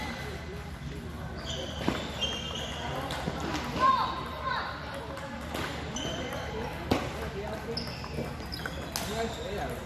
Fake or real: real